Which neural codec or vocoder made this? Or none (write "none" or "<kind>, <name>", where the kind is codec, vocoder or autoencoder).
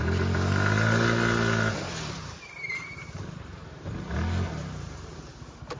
none